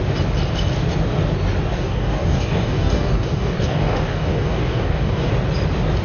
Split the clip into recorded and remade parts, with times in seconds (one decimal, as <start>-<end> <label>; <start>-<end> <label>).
0.0-1.7 recorded; 1.7-5.3 remade; 5.3-6.0 recorded